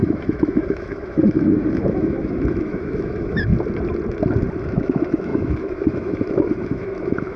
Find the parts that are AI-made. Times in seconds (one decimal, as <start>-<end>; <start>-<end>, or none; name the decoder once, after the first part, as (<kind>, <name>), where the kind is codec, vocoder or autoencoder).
0.0-3.5 (autoencoder, DAC-VAE); 4.6-7.4